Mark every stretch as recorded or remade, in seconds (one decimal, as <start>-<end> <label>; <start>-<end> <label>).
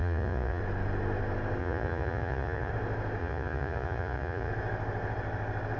0.0-0.6 remade; 0.6-1.6 recorded; 1.6-2.7 remade; 2.7-3.2 recorded; 3.2-4.5 remade; 4.5-5.8 recorded